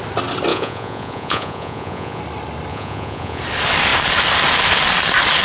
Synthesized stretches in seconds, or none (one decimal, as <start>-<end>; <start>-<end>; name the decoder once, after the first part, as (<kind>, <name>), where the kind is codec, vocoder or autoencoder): 0.5-2.2 (vocoder, Vocos); 2.7-3.4